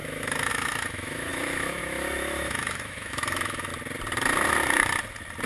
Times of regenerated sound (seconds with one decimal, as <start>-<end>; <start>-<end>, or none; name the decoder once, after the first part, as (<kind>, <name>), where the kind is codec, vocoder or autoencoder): 0.0-3.7 (autoencoder, DAC-VAE)